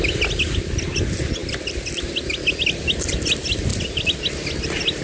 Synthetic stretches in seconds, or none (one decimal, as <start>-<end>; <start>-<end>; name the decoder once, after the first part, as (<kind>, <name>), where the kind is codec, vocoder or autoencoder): none